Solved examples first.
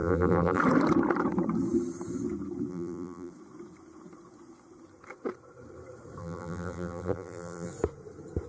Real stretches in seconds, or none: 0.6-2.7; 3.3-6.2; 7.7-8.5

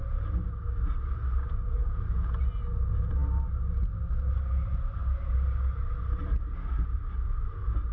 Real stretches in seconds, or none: 0.0-7.9

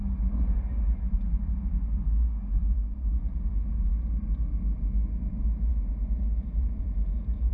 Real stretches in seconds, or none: 3.9-5.7